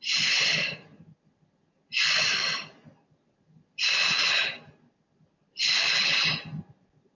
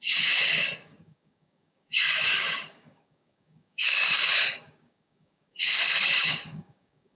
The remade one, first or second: second